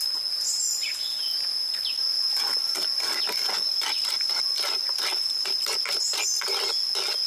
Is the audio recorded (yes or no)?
yes